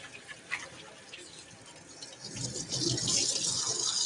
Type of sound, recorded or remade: recorded